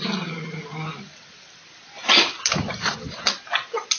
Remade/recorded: recorded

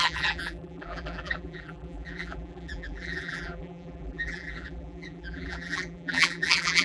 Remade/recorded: remade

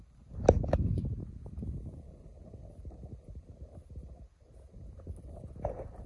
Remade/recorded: recorded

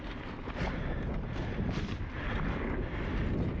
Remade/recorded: recorded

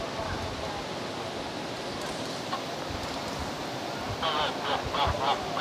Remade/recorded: recorded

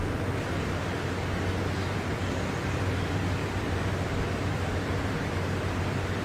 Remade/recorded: remade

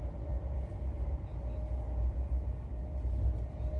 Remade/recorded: recorded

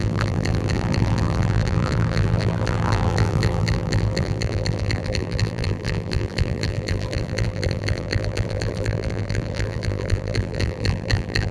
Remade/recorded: remade